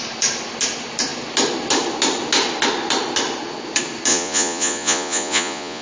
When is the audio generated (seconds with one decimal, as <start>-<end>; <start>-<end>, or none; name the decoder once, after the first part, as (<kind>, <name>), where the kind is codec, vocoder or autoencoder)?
4.1-5.8 (vocoder, Vocos)